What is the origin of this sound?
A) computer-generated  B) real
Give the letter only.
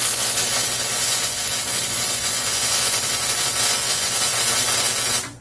A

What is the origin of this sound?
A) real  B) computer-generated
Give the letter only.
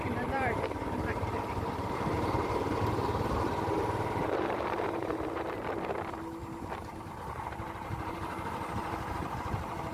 B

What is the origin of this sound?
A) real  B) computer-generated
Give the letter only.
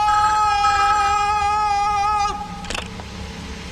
A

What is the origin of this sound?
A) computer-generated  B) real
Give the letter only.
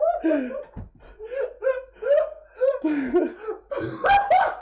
B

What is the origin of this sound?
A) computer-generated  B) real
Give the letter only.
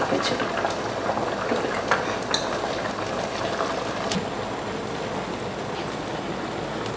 B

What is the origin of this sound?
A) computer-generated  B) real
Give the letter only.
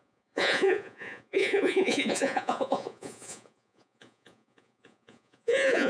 A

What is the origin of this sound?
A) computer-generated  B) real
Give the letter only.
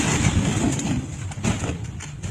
B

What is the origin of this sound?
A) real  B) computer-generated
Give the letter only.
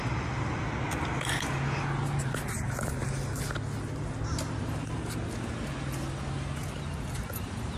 A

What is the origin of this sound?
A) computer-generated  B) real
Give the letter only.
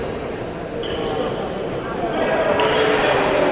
B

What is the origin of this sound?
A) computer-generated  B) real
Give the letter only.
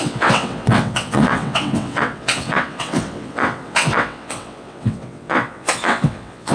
A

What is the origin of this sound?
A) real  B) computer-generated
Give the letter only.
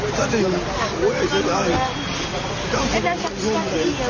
A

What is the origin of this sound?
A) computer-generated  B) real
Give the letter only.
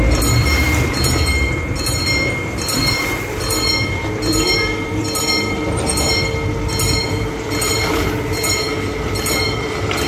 A